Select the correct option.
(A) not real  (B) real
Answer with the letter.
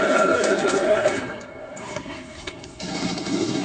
A